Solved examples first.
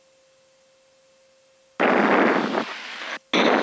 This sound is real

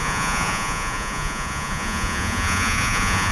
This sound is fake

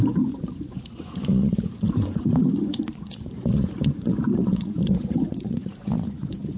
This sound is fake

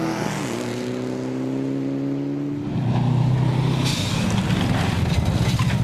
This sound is real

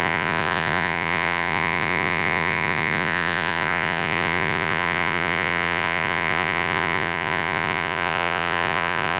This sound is fake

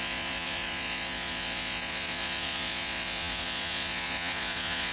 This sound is fake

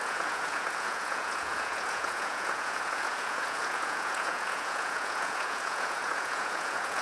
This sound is fake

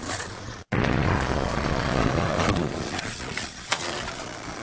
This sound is fake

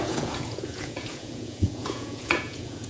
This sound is fake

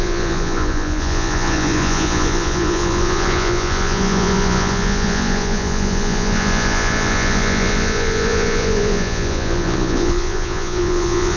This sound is fake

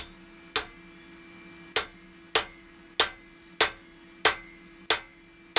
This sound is real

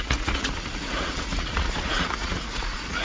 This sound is fake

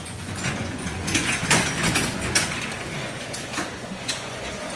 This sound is fake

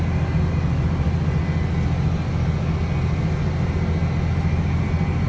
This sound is real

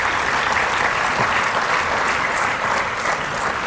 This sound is real